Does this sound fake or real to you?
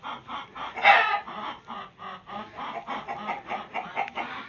real